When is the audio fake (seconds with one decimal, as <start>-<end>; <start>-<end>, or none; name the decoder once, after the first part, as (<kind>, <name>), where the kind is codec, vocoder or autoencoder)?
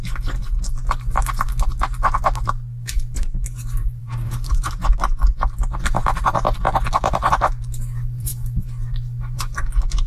4.0-4.7 (codec, DAC)